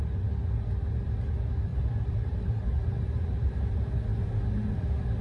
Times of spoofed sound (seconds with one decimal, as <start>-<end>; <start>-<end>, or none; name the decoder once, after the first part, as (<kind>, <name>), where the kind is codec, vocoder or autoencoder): 1.7-3.8 (vocoder, BigVGAN v2)